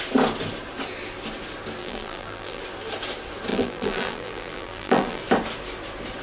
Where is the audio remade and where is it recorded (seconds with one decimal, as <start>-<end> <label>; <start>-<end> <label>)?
0.0-1.8 recorded; 1.8-2.6 remade; 2.6-3.5 recorded; 3.5-5.2 remade; 5.2-6.2 recorded